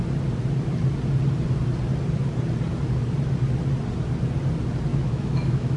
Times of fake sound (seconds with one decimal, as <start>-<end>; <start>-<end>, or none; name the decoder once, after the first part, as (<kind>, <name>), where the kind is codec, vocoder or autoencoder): 4.9-5.8 (autoencoder, DAC-VAE)